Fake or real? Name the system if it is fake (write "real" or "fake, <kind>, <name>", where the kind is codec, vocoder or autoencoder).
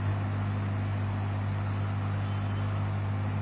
real